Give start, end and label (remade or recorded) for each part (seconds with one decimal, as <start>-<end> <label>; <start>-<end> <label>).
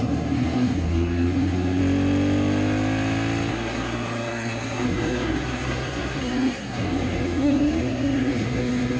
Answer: 0.0-1.8 remade; 1.8-3.5 recorded; 3.5-9.0 remade